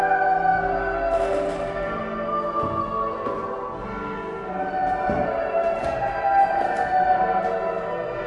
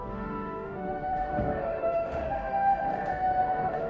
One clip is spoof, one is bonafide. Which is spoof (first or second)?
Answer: second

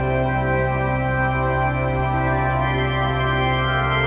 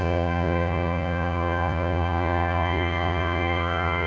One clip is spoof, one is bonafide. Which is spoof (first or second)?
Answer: second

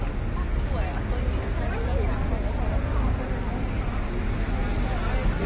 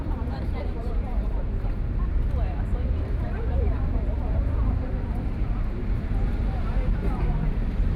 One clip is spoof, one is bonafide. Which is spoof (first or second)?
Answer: second